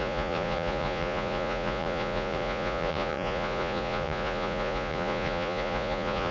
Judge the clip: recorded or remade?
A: remade